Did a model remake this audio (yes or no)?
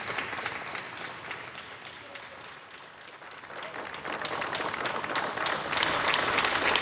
no